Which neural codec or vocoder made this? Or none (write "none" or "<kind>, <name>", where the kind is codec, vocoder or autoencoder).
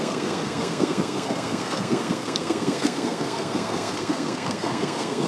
codec, SNAC